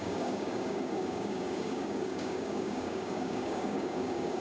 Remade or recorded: remade